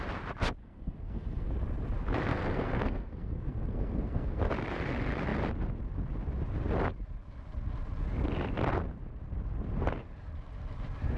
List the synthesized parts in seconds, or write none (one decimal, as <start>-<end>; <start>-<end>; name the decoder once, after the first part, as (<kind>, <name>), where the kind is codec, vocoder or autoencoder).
0.6-1.5 (codec, SNAC); 2.3-4.4